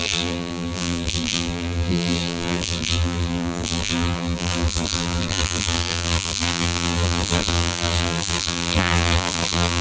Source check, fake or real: fake